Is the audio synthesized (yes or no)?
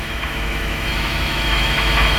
yes